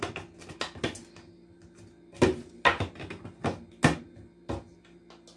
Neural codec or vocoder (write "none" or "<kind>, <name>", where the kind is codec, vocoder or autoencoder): none